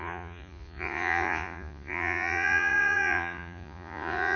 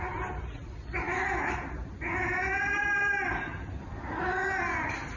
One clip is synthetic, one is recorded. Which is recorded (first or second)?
second